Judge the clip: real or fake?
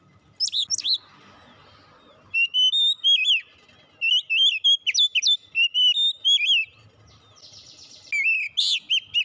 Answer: real